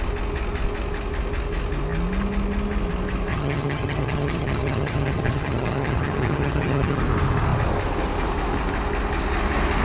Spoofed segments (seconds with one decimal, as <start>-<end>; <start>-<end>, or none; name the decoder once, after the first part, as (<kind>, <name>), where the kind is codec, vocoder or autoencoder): 3.3-7.0 (vocoder, HiFi-GAN)